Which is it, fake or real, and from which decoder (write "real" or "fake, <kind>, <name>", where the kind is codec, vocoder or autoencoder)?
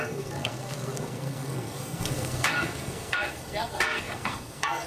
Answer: fake, codec, SNAC